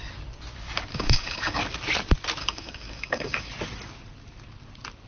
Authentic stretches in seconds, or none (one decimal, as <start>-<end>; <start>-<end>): 0.0-0.9; 1.6-2.4; 3.5-5.1